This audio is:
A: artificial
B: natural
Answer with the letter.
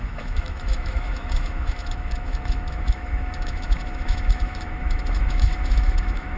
A